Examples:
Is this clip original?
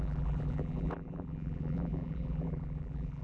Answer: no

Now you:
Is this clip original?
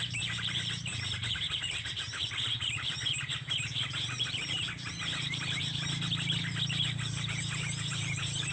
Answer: no